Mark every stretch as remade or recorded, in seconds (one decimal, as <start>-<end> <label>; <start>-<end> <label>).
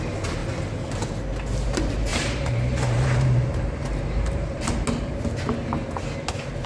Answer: 0.0-0.4 recorded; 0.4-0.9 remade; 0.9-2.1 recorded; 2.1-4.7 remade; 4.7-6.7 recorded